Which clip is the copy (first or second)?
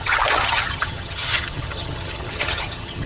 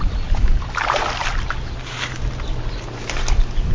first